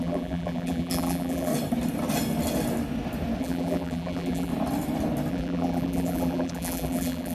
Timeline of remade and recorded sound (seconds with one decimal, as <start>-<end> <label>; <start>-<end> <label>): 0.0-1.5 remade; 1.5-3.4 recorded; 3.4-4.5 remade; 4.5-5.3 recorded; 5.3-7.3 remade